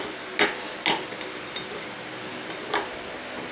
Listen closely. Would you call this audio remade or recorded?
recorded